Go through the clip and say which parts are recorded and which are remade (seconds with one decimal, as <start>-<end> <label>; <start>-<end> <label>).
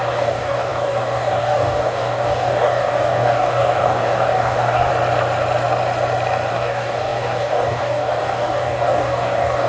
0.0-4.9 remade; 4.9-6.5 recorded; 6.5-9.7 remade